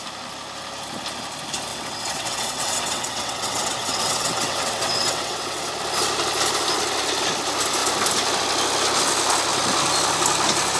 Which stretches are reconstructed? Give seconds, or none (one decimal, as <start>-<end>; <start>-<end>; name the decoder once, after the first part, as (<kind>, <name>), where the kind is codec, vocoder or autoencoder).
1.7-5.7 (vocoder, WaveNeXt)